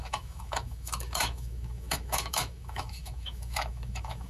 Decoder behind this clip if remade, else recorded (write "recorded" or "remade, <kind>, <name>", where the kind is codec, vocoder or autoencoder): remade, autoencoder, DAC-VAE